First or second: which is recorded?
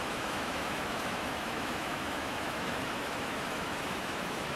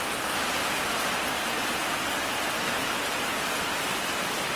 second